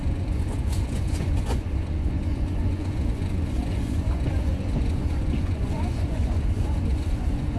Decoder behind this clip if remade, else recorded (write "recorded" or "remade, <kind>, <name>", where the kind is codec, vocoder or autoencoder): remade, vocoder, Vocos